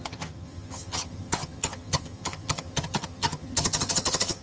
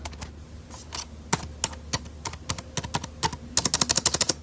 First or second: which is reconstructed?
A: first